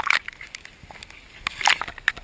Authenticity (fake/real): real